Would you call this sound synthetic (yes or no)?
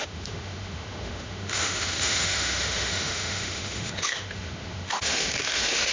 yes